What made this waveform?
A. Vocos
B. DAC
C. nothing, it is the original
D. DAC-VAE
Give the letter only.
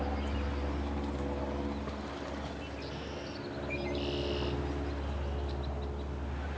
C